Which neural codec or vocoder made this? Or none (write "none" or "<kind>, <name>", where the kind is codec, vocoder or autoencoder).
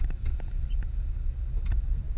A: none